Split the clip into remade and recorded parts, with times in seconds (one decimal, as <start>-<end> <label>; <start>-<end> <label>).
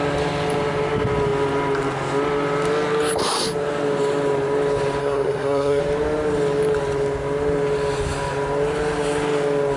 0.0-5.0 recorded; 5.0-5.8 remade; 5.8-9.8 recorded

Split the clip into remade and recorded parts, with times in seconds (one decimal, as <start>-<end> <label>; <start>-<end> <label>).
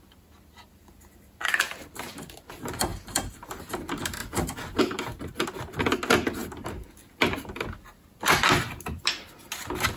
0.0-2.9 recorded; 2.9-3.6 remade; 3.6-10.0 recorded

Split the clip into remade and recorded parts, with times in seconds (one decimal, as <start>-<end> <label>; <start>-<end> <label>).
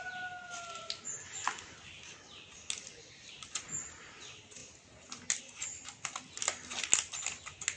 0.0-7.8 recorded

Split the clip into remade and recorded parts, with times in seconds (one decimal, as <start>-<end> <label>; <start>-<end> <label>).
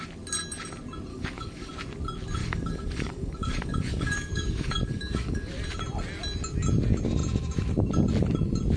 0.0-1.1 recorded; 1.1-1.7 remade; 1.7-2.4 recorded; 2.4-5.5 remade; 5.5-8.8 recorded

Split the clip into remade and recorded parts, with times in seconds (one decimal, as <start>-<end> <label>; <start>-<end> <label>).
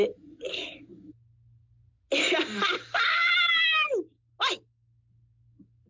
0.0-5.9 recorded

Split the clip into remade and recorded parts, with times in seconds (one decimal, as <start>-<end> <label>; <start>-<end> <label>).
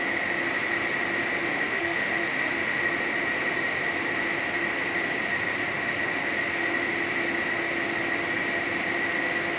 0.0-1.4 recorded; 1.4-2.9 remade; 2.9-9.6 recorded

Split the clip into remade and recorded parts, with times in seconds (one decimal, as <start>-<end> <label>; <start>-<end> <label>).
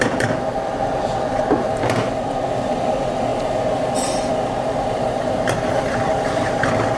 0.0-3.3 remade; 3.3-4.3 recorded; 4.3-7.0 remade